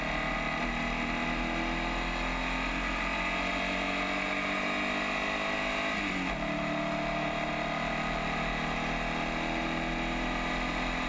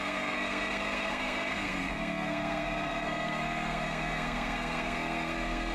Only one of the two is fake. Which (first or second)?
second